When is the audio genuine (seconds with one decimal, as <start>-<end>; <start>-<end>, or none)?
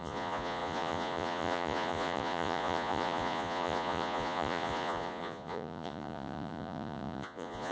none